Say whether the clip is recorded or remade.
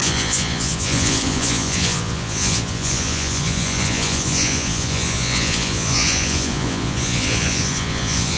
remade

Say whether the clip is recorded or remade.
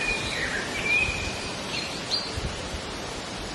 remade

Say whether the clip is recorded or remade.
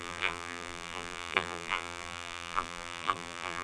remade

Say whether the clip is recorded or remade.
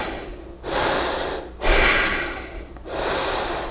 recorded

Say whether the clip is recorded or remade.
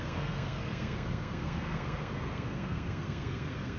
remade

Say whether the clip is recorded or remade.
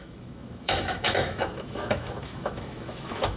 remade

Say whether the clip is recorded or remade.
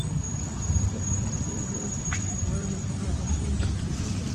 remade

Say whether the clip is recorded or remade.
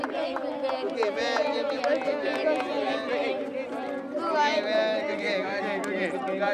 recorded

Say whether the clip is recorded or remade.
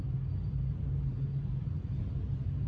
recorded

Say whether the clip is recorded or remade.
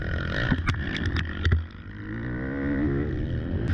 recorded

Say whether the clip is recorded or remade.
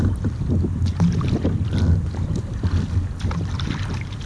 recorded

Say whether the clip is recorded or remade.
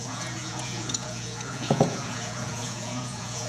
remade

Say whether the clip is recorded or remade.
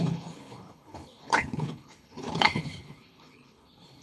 remade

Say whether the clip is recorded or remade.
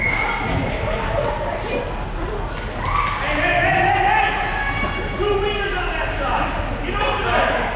recorded